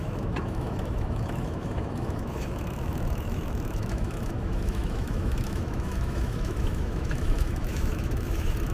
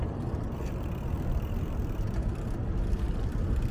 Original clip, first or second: second